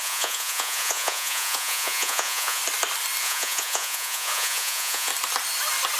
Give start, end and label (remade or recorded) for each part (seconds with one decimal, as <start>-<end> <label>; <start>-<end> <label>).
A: 0.0-2.6 remade; 2.6-3.2 recorded; 3.2-5.1 remade; 5.1-6.0 recorded